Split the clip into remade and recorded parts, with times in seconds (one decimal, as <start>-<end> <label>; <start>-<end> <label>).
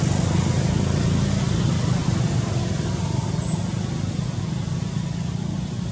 0.0-5.9 recorded